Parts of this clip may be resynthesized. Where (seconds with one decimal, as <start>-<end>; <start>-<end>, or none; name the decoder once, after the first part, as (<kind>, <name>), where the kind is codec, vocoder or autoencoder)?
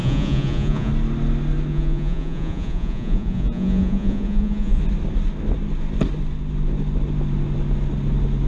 0.0-0.9 (vocoder, Vocos); 1.7-4.8